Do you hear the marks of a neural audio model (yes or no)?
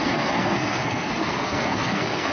yes